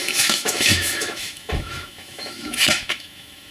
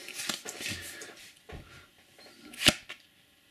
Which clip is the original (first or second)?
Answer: second